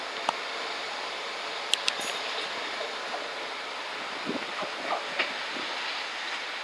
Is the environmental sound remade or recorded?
recorded